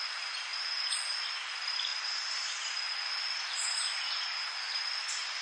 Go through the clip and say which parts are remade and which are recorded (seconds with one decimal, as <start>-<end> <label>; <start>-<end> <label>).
0.0-5.4 recorded